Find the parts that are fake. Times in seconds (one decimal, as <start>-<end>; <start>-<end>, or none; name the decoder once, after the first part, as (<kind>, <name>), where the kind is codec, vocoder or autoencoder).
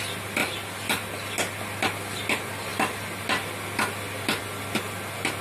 none